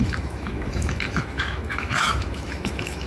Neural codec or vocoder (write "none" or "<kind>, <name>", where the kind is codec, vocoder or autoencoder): autoencoder, DAC-VAE